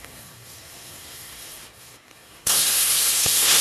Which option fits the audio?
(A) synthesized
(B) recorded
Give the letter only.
A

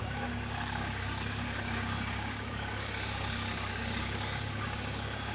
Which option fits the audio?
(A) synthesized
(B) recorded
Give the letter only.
A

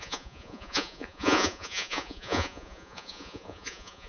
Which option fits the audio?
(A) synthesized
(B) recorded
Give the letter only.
A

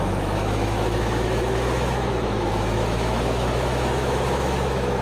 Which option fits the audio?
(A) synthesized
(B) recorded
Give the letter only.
A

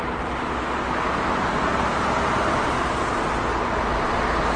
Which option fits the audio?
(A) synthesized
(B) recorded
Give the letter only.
B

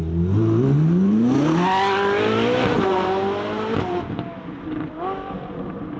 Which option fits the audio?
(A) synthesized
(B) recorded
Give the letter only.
B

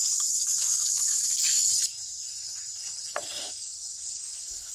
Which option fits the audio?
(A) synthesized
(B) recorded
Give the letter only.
A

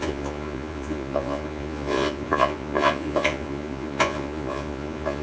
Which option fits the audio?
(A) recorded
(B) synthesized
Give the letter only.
B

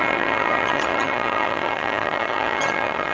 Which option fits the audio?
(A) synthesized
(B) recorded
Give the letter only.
A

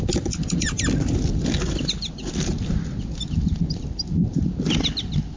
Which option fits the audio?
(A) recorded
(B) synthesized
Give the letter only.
A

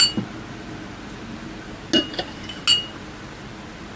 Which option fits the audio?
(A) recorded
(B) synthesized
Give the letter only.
A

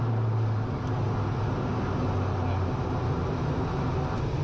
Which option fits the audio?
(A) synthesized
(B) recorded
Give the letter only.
B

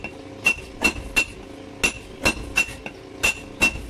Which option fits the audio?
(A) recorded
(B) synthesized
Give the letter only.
A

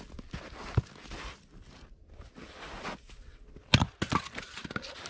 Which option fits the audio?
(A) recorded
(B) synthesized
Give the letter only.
A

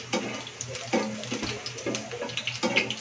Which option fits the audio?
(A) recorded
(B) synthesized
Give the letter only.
A